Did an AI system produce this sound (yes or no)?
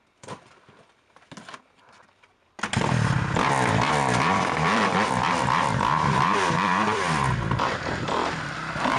yes